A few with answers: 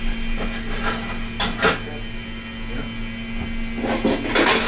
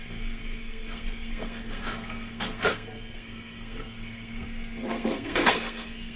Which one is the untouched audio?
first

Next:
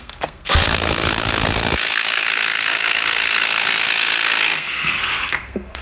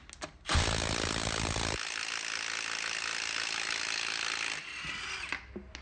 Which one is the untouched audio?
second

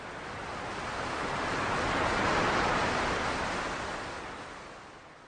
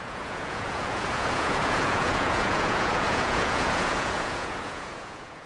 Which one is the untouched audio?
first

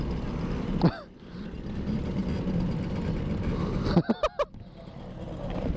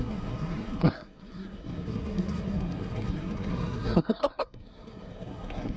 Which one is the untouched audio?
first